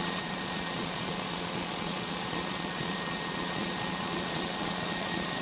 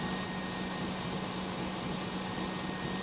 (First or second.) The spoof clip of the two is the first